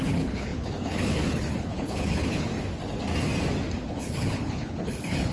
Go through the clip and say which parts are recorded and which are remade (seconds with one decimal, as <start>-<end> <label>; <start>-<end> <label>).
0.0-2.5 remade; 2.5-3.9 recorded; 3.9-5.3 remade